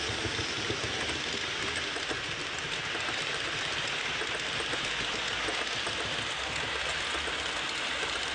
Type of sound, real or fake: real